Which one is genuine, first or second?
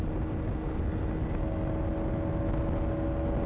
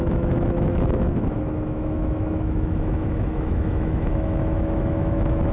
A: first